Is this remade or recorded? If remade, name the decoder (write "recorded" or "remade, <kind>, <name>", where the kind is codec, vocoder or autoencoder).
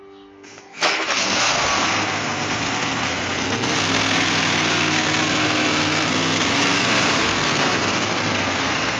remade, codec, SNAC